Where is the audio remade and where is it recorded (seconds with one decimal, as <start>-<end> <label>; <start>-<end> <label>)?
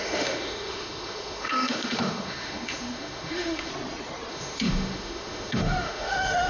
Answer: 0.0-3.7 remade; 3.7-4.3 recorded; 4.3-6.5 remade